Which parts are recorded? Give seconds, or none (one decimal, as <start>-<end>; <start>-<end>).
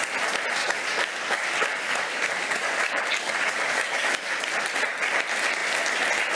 0.0-0.6; 4.4-6.4